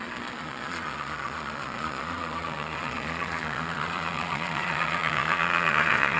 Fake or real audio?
fake